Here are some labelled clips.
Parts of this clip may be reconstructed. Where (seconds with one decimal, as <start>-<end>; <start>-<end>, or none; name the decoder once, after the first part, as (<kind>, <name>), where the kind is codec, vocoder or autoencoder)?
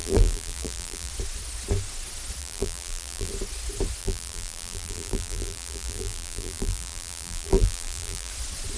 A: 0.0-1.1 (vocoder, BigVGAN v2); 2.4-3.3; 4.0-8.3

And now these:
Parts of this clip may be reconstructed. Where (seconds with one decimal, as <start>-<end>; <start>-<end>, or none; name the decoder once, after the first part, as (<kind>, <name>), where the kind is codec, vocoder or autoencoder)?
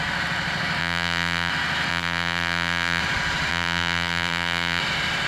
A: 0.8-1.5 (vocoder, BigVGAN v2); 1.9-3.0; 3.5-4.8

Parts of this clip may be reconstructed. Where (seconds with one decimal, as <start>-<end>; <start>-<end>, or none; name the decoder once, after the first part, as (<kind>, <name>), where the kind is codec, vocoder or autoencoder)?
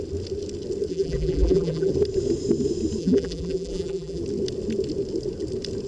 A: 0.9-1.9 (vocoder, BigVGAN v2); 3.0-4.2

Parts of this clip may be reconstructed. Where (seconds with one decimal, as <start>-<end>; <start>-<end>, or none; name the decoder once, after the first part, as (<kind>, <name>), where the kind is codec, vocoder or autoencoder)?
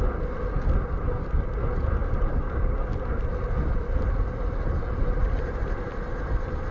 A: 2.0-4.8 (vocoder, BigVGAN v2); 5.2-6.7